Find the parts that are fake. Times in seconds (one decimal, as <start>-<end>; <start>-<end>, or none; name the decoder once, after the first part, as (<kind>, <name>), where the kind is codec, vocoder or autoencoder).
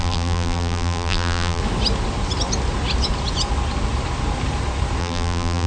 0.0-1.6 (vocoder, BigVGAN v2); 5.0-5.7